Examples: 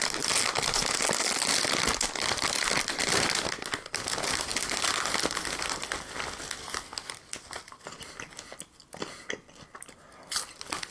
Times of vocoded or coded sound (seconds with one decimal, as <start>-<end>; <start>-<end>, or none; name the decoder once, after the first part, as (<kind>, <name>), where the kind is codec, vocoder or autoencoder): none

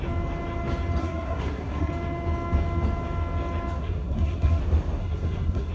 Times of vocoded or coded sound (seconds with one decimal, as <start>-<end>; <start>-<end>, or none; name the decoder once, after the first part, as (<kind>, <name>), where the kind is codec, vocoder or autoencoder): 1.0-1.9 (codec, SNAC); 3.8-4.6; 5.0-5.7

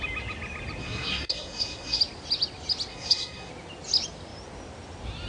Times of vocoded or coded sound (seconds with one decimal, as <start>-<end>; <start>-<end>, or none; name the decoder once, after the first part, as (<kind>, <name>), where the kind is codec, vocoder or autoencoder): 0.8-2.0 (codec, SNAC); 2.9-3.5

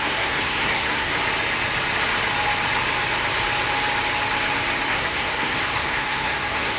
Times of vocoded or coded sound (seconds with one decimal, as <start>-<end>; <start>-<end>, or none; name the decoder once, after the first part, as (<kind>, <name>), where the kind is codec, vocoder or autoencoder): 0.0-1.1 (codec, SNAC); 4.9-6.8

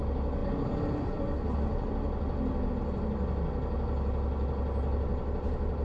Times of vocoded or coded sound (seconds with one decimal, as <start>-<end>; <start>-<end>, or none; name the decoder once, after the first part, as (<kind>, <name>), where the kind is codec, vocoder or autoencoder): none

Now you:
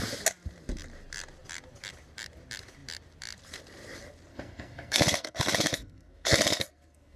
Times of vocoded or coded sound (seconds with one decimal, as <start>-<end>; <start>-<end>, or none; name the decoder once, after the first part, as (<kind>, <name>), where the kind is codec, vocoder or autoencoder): 4.3-7.2 (codec, SNAC)

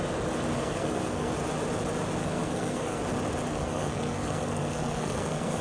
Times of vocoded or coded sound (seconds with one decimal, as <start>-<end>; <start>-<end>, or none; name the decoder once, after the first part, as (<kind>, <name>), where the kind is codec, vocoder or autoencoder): 0.5-1.3 (codec, SNAC); 2.2-3.0; 3.5-5.6